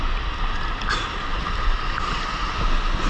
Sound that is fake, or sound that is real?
real